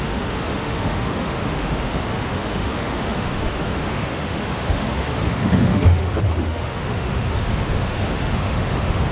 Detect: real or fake fake